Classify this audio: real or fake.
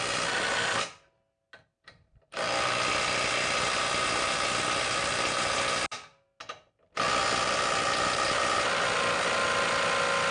real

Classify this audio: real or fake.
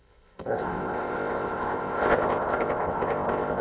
fake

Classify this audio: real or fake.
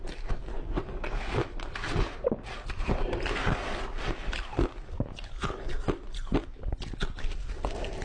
real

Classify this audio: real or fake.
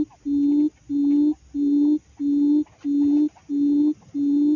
real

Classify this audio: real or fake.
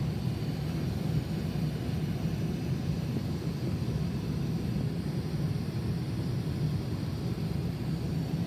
real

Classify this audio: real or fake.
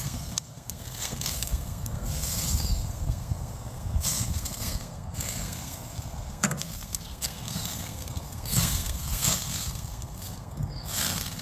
fake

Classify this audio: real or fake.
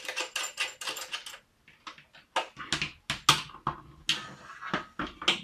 real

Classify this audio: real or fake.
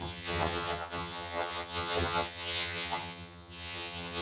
fake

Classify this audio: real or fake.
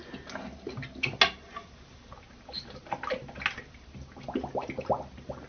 real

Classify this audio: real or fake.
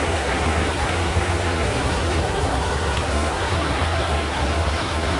fake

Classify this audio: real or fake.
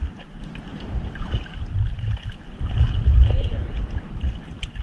real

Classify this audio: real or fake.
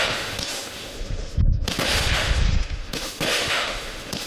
fake